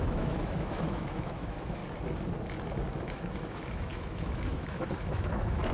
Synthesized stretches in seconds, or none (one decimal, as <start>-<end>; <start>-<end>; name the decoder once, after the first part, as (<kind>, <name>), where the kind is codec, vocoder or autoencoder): 0.0-1.8 (autoencoder, DAC-VAE); 3.0-5.7